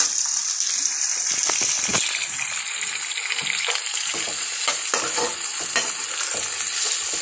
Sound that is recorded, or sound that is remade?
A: recorded